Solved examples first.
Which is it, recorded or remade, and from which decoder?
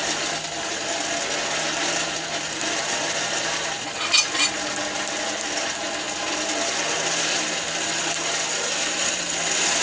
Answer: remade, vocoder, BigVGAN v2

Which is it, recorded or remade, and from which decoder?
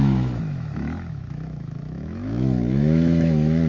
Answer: remade, autoencoder, DAC-VAE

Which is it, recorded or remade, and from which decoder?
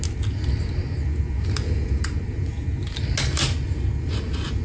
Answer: recorded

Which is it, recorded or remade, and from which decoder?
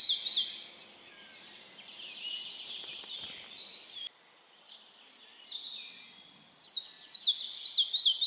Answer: recorded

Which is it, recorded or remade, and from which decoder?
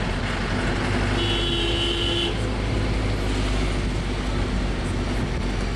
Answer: recorded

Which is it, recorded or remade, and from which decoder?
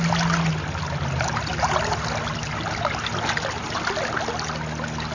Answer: recorded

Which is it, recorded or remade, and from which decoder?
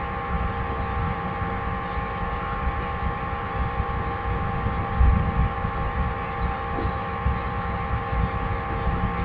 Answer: remade, vocoder, BigVGAN v2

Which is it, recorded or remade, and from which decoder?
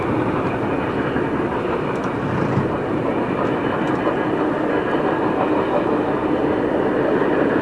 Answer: recorded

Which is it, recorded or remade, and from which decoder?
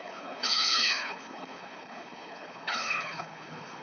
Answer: remade, codec, HILCodec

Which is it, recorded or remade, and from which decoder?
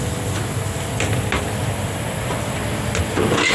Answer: recorded